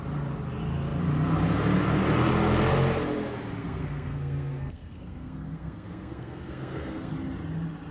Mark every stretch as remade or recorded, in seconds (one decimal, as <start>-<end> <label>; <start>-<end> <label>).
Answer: 0.0-3.6 recorded; 3.6-7.1 remade; 7.1-7.9 recorded